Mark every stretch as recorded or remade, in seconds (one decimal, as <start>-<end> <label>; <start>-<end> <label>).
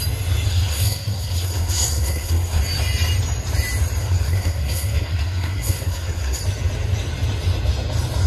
0.0-0.5 recorded; 0.5-2.6 remade; 2.6-4.0 recorded; 4.0-6.4 remade; 6.4-8.3 recorded